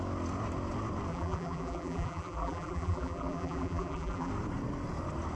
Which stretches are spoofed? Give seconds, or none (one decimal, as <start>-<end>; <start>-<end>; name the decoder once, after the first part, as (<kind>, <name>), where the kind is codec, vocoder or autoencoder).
1.1-4.3 (vocoder, BigVGAN v2)